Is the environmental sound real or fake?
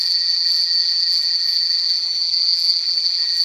fake